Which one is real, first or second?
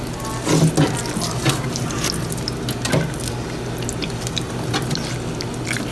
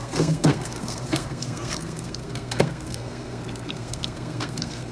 first